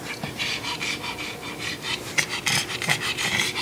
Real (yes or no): no